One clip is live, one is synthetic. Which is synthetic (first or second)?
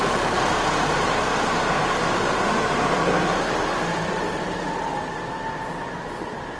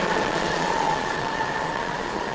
second